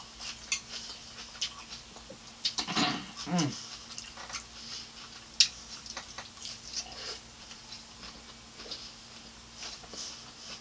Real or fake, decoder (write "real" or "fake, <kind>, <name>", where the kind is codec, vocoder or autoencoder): real